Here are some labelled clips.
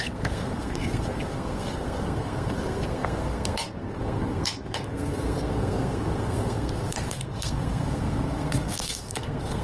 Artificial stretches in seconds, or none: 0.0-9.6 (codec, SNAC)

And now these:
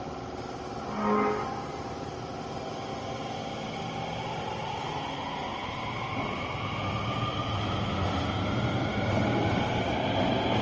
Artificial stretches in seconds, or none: none

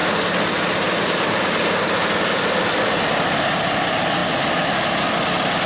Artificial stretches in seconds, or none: none

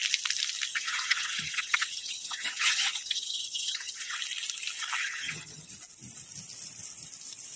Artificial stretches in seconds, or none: 0.7-4.1 (vocoder, HiFi-GAN); 5.0-5.7

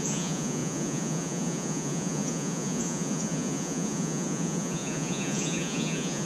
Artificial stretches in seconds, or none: 0.0-6.3 (vocoder, Vocos)

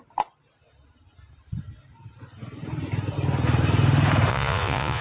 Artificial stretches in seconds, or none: 4.3-5.0 (vocoder, Vocos)